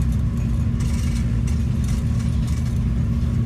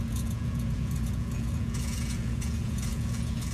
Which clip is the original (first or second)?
first